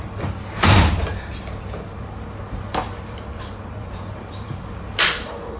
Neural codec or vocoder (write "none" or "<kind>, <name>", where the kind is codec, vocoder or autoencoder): vocoder, BigVGAN v2